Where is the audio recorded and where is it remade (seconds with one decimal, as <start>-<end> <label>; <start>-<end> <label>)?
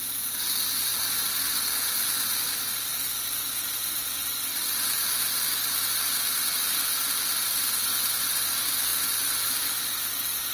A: 0.0-10.5 recorded